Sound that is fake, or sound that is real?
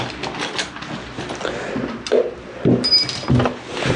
real